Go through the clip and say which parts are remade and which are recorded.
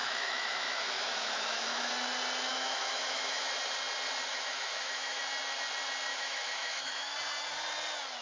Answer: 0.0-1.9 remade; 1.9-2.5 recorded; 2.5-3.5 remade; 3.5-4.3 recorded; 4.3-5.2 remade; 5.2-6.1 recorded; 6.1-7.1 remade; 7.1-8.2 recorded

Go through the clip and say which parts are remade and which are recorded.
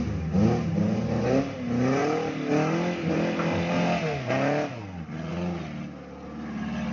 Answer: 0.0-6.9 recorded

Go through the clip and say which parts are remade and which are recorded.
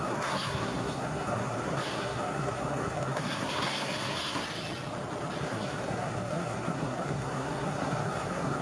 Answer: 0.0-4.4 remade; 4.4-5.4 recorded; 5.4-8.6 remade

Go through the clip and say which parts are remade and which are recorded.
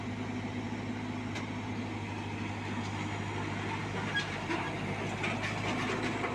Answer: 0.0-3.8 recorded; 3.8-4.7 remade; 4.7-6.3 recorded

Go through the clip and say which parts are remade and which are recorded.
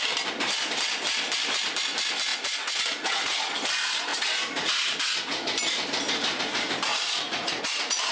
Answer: 0.0-2.3 recorded; 2.3-3.5 remade; 3.5-4.1 recorded; 4.1-5.0 remade; 5.0-6.9 recorded; 6.9-8.1 remade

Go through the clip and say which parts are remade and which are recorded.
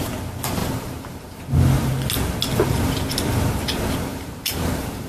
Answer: 0.0-0.6 recorded; 0.6-1.4 remade; 1.4-4.1 recorded; 4.1-5.1 remade